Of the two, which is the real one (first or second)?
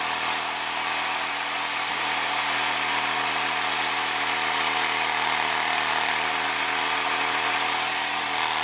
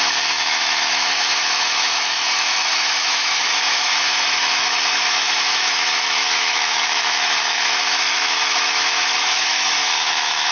first